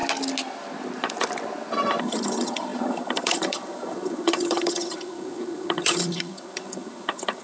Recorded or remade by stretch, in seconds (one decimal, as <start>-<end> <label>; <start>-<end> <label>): 0.0-2.0 recorded; 2.0-7.4 remade